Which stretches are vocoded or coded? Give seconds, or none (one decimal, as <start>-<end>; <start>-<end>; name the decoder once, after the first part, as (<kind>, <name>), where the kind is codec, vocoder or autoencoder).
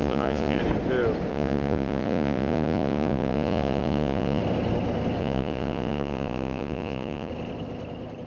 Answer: 0.0-0.6 (vocoder, Vocos); 1.3-4.4; 5.2-7.3